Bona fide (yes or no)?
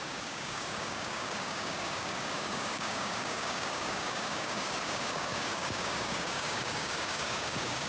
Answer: no